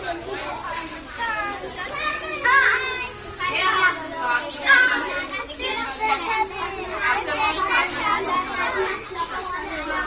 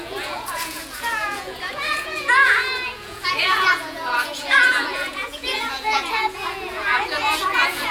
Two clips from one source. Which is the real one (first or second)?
first